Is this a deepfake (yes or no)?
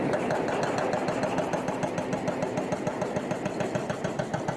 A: no